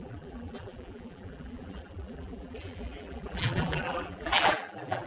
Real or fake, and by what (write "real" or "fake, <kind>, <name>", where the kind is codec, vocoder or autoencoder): fake, vocoder, BigVGAN v2